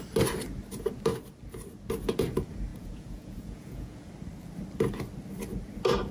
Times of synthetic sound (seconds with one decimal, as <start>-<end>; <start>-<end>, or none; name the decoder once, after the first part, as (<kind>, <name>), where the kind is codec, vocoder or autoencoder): 2.7-4.1 (vocoder, Vocos)